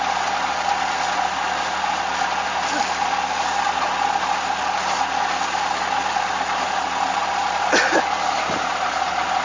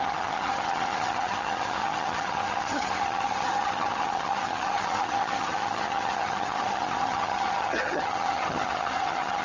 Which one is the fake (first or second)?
second